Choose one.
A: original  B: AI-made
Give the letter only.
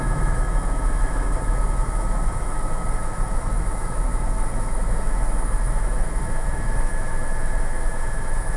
B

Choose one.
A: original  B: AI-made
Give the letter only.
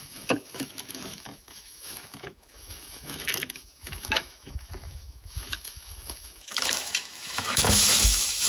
B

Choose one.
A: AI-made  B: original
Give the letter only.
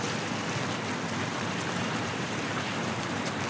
B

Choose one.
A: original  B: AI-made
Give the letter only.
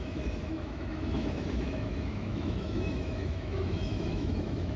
B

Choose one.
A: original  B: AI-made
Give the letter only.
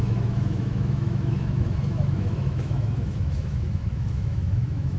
B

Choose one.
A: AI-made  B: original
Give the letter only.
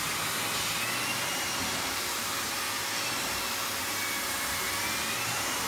B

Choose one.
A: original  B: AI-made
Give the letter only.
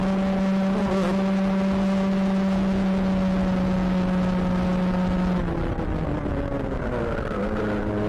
A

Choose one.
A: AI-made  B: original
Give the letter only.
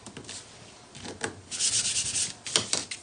B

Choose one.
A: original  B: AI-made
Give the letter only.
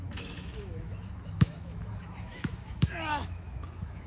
B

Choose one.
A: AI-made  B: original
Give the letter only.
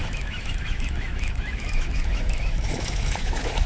A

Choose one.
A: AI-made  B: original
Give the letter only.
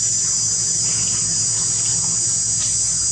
B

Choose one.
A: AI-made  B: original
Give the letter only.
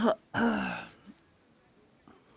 B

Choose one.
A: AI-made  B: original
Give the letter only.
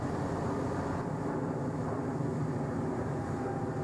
B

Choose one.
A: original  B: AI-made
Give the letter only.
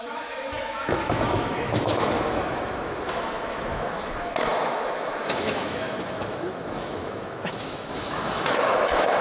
B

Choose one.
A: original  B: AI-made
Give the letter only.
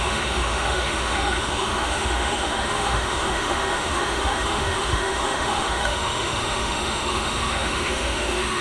B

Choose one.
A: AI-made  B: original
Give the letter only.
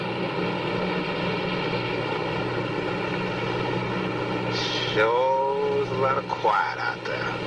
B